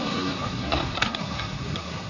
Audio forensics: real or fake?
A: fake